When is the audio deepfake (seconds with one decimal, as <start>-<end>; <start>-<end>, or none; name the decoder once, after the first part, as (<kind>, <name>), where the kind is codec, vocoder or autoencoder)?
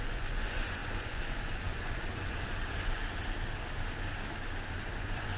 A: 0.0-3.0 (vocoder, Vocos); 4.8-5.4